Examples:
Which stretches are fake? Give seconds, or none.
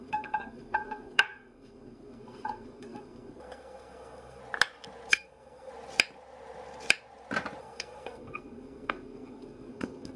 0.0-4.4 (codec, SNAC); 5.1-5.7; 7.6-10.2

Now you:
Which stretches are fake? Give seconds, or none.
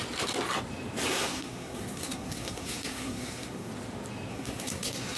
1.1-3.7 (codec, SNAC); 4.3-5.2